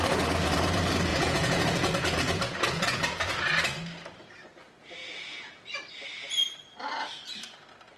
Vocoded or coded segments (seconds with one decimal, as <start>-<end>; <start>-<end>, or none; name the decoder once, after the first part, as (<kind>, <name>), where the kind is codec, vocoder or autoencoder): 1.1-3.3 (vocoder, Vocos); 5.0-5.7

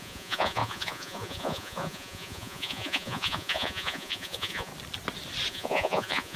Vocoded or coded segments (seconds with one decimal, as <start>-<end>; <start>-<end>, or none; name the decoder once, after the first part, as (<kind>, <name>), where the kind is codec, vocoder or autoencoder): 0.0-4.7 (vocoder, Vocos); 5.5-6.4

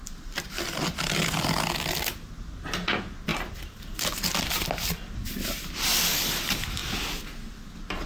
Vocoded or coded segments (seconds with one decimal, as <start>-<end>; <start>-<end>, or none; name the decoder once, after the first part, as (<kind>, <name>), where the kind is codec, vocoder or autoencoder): 0.0-2.0 (vocoder, BigVGAN v2); 3.3-3.8

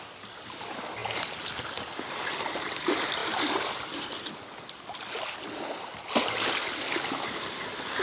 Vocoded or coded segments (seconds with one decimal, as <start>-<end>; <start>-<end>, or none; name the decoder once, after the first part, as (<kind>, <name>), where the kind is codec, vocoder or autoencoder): none